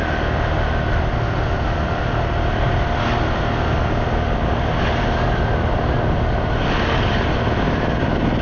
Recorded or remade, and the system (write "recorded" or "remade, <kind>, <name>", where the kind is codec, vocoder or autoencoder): recorded